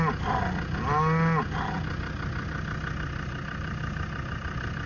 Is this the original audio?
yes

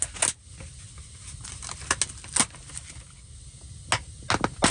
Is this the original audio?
yes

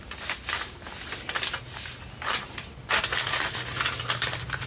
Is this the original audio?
yes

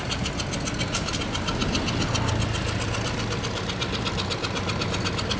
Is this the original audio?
yes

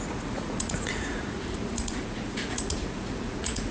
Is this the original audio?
no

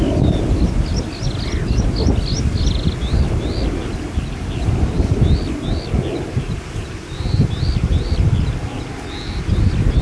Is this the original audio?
yes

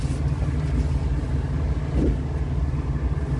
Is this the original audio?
yes